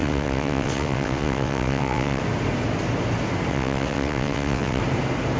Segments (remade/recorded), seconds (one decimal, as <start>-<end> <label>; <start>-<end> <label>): 0.0-2.2 remade; 2.2-3.5 recorded; 3.5-4.8 remade; 4.8-5.4 recorded

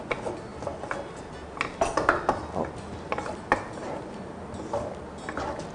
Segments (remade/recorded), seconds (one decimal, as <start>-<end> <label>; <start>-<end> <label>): 0.0-5.7 recorded

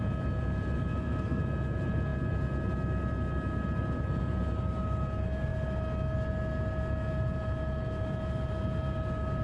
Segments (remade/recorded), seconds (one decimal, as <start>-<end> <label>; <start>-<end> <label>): 0.0-0.9 recorded; 0.9-1.4 remade; 1.4-9.4 recorded